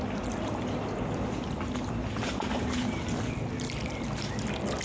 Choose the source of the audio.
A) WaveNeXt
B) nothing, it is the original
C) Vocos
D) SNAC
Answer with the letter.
B